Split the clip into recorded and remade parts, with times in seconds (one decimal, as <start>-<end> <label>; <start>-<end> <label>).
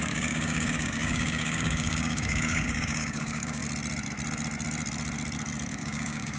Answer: 0.0-3.6 remade; 3.6-5.7 recorded; 5.7-6.4 remade